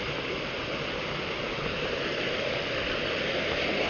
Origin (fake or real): real